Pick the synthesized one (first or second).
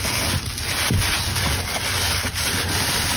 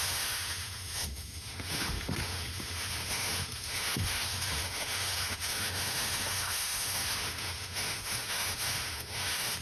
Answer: second